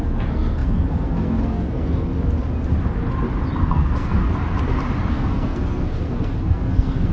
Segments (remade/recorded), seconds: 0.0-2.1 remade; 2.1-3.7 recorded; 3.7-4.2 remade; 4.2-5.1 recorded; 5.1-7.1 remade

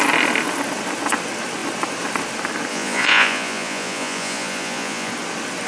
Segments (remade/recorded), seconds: 0.0-2.7 recorded; 2.7-5.1 remade; 5.1-5.7 recorded

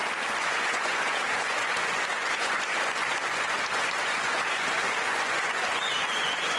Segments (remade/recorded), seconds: 0.0-6.6 remade

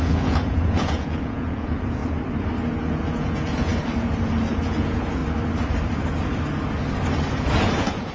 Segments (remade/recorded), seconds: 0.0-2.0 remade; 2.0-2.8 recorded; 2.8-3.7 remade; 3.7-4.5 recorded; 4.5-5.2 remade; 5.2-7.3 recorded; 7.3-8.1 remade